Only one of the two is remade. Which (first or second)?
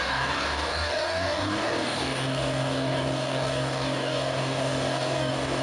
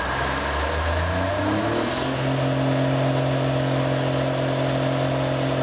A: first